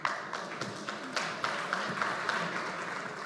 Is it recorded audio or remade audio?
recorded